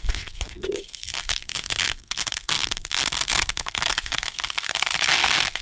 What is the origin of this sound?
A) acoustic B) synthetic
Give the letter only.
B